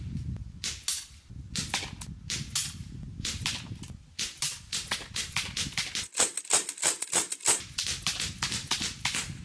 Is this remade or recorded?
recorded